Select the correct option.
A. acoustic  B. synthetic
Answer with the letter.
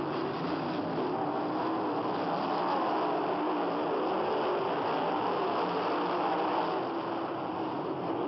A